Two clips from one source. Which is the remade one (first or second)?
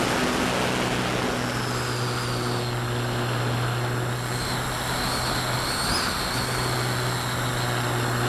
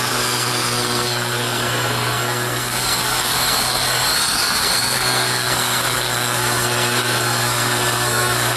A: second